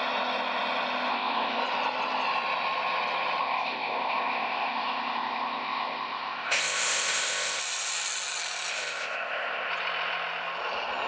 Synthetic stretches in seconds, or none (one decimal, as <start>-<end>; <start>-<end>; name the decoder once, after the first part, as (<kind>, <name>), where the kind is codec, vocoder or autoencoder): 1.1-1.6 (codec, ZipCodec); 3.4-7.6; 8.7-9.7